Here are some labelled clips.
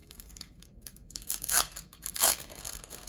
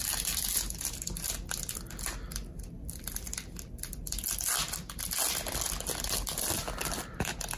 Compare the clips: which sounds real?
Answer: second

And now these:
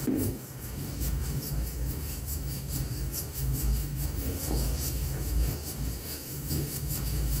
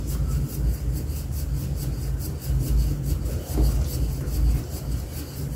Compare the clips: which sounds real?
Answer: second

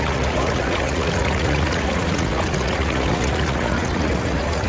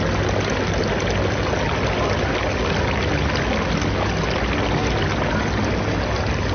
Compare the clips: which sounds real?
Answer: second